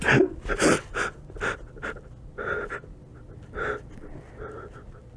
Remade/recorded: recorded